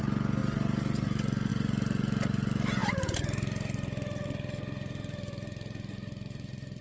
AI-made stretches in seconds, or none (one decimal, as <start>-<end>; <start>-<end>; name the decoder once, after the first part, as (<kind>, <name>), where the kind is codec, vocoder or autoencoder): none